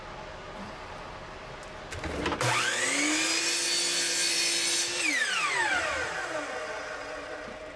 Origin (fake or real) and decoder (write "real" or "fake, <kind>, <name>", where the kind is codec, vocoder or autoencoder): real